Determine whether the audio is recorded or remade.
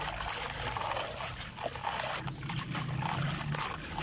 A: recorded